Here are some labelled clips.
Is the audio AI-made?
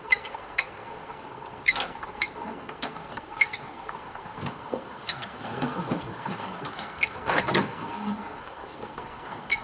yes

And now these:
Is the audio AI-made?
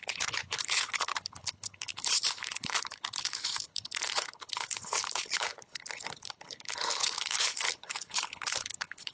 yes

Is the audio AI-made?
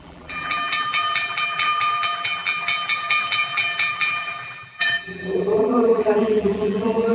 yes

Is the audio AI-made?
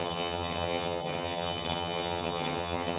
yes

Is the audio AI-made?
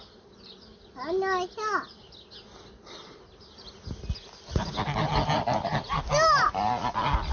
no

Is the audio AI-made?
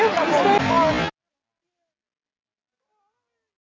no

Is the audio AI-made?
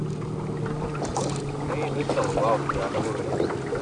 no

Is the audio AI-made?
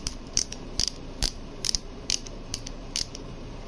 yes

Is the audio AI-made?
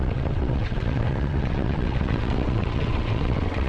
yes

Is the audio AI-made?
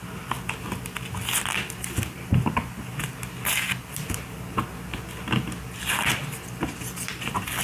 no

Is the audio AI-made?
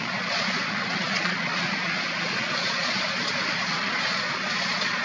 yes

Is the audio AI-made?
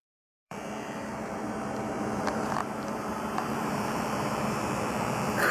yes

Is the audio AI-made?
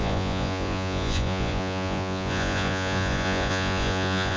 yes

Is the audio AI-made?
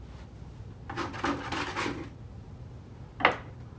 no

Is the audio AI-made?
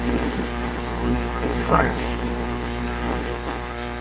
yes